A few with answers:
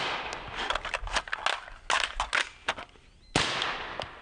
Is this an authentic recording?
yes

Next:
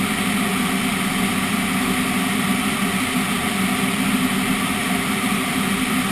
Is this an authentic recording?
yes